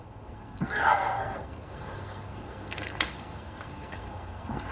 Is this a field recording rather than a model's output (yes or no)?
no